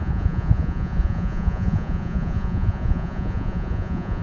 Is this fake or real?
fake